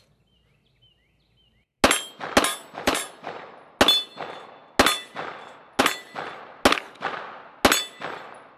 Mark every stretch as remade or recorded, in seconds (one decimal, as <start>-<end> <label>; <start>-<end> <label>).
0.0-2.6 recorded; 2.6-3.5 remade; 3.5-8.6 recorded